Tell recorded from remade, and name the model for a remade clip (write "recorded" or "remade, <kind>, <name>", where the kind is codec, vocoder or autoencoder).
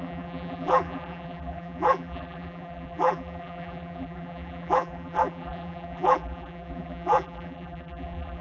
remade, vocoder, BigVGAN v2